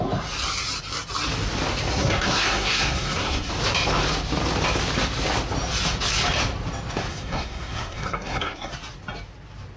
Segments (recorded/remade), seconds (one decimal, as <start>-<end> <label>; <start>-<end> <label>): 0.0-1.9 recorded; 1.9-3.5 remade; 3.5-7.1 recorded; 7.1-8.7 remade; 8.7-9.8 recorded